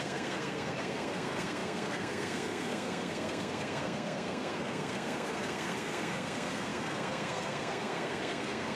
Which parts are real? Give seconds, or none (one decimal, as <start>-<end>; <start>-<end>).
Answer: none